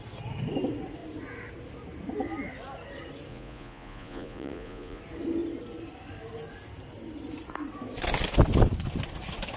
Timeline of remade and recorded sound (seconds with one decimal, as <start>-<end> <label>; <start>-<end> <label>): 0.0-3.3 recorded; 3.3-5.0 remade; 5.0-9.6 recorded

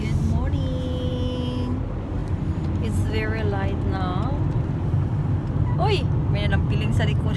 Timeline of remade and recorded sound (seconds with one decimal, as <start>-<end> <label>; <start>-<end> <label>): 0.0-7.4 recorded